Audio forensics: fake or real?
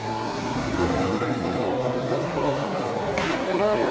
fake